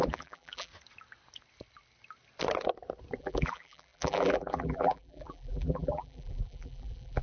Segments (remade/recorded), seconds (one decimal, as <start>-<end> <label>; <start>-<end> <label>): 0.0-0.7 remade; 0.7-3.2 recorded; 3.2-7.2 remade